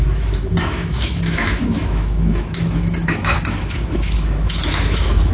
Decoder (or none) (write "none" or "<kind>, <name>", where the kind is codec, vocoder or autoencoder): autoencoder, DAC-VAE